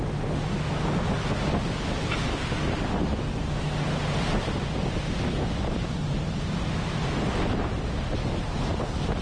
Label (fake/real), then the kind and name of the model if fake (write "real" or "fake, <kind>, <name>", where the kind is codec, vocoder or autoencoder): real